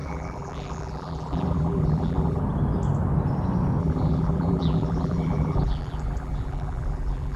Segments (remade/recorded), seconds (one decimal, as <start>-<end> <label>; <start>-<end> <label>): 0.0-2.4 remade; 2.4-3.8 recorded; 3.8-7.4 remade